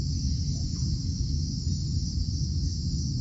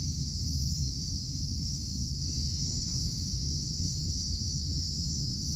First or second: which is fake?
second